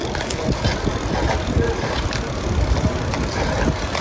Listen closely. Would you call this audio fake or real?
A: real